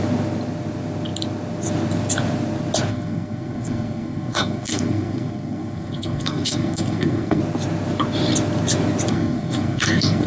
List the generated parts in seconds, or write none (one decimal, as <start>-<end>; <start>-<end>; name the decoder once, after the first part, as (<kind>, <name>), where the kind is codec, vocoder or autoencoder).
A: 2.9-7.4 (codec, SNAC); 9.1-10.3

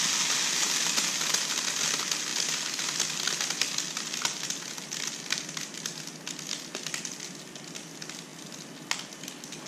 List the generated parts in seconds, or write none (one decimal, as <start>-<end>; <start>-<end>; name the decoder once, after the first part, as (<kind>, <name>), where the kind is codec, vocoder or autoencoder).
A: none

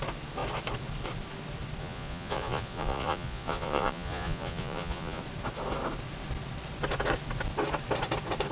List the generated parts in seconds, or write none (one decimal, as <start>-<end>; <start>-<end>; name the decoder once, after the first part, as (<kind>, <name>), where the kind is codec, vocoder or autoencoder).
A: 1.8-5.2 (vocoder, Vocos)